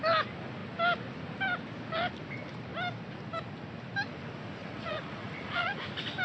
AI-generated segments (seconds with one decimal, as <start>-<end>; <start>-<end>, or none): 4.6-5.8